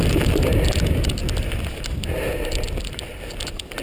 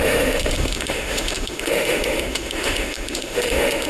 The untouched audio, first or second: first